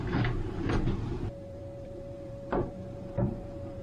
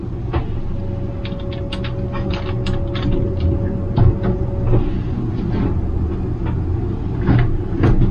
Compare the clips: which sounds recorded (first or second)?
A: second